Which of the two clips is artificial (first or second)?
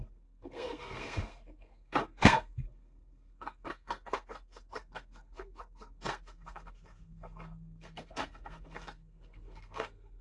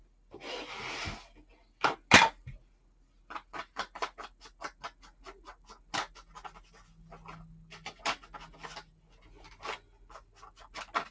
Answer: first